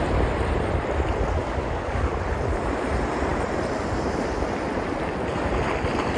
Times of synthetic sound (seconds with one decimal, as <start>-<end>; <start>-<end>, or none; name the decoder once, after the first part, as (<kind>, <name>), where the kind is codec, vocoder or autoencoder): 1.4-2.1 (codec, DAC)